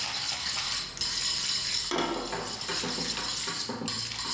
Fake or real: real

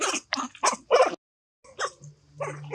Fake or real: real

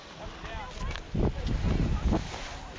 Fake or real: real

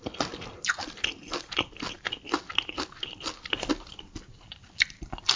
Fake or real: real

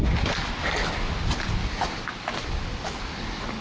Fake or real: real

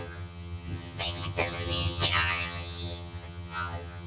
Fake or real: fake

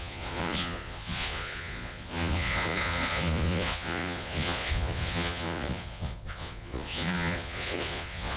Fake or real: fake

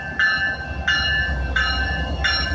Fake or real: real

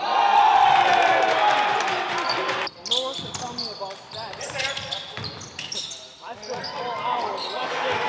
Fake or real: real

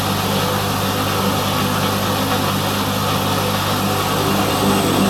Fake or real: real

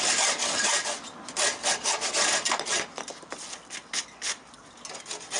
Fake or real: real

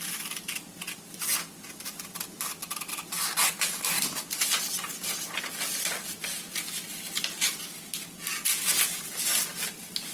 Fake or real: real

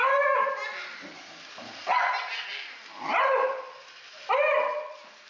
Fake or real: real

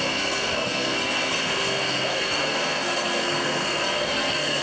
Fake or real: fake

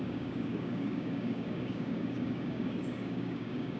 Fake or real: fake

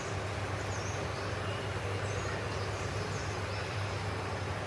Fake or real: real